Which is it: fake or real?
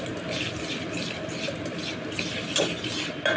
real